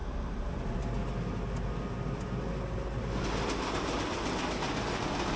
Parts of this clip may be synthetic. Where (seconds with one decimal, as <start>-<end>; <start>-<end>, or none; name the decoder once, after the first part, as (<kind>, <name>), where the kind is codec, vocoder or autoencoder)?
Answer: none